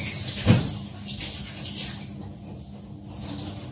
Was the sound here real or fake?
real